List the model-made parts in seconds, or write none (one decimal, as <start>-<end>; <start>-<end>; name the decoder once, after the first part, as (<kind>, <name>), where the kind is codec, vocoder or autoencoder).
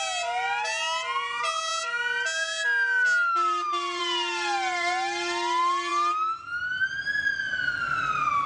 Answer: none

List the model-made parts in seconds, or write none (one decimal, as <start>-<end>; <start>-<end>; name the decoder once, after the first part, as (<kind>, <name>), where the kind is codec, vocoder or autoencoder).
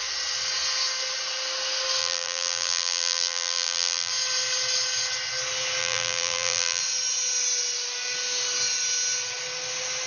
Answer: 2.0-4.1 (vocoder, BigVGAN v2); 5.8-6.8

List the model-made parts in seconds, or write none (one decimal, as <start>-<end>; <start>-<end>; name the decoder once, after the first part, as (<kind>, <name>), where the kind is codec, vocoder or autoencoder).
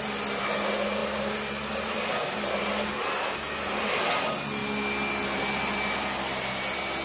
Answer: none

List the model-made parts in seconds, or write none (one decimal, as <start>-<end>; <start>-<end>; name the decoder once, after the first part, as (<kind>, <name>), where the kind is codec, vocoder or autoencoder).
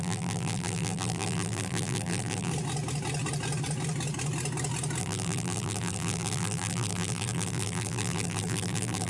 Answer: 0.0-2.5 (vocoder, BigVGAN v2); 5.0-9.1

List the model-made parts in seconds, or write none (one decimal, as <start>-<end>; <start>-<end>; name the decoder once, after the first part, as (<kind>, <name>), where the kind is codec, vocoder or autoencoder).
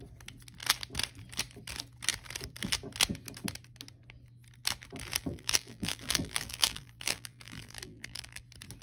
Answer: 5.2-8.4 (vocoder, BigVGAN v2)